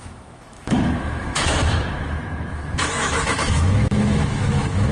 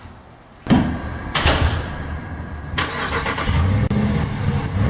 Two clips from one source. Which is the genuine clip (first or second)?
second